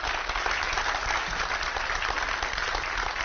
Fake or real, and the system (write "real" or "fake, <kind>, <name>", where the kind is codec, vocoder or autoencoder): real